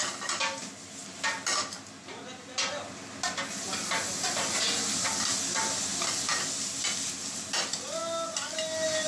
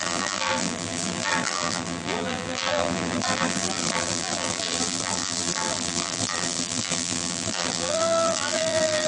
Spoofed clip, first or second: second